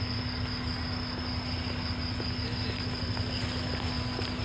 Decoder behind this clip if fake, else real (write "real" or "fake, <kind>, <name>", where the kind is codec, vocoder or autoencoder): real